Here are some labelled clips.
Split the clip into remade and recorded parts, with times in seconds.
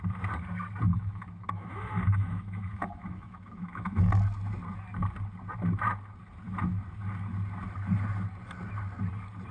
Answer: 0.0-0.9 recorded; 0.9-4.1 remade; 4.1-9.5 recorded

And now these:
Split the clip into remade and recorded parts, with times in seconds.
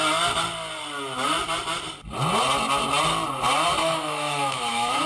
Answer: 0.0-3.8 recorded; 3.8-5.1 remade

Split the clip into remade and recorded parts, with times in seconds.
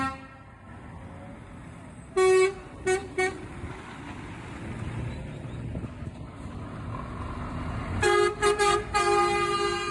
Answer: 0.0-9.9 recorded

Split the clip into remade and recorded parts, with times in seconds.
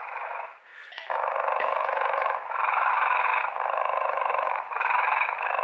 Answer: 0.0-5.6 remade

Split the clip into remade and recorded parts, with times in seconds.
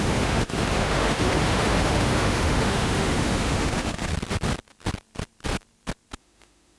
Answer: 0.0-4.1 remade; 4.1-6.2 recorded; 6.2-6.8 remade